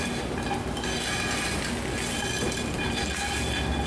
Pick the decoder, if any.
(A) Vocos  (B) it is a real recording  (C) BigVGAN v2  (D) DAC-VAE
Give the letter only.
B